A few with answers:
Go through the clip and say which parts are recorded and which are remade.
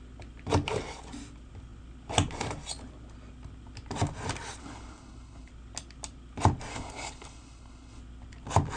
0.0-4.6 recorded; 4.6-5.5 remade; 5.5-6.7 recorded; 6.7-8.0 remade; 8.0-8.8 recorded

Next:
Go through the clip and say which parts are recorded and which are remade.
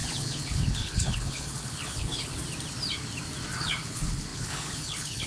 0.0-2.3 remade; 2.3-3.6 recorded; 3.6-5.3 remade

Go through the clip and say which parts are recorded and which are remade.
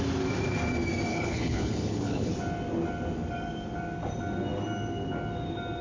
0.0-1.1 recorded; 1.1-2.3 remade; 2.3-5.8 recorded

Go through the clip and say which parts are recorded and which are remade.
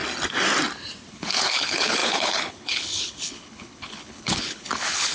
0.0-1.1 recorded; 1.1-5.1 remade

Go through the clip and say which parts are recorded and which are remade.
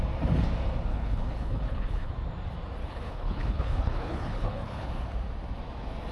0.0-0.9 recorded; 0.9-2.1 remade; 2.1-2.8 recorded; 2.8-4.9 remade; 4.9-6.1 recorded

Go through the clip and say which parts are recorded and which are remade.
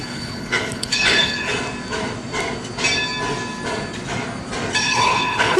0.0-1.5 remade; 1.5-4.8 recorded; 4.8-5.6 remade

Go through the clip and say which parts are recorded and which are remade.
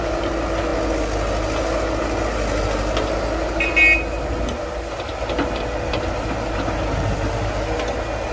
0.0-8.3 recorded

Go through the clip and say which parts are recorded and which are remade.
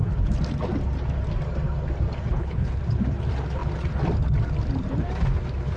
0.0-2.3 recorded; 2.3-2.8 remade; 2.8-5.8 recorded